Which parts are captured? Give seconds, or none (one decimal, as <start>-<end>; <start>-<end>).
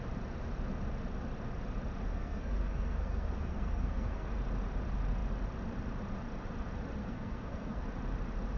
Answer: 0.0-2.1; 4.3-7.0; 7.8-8.6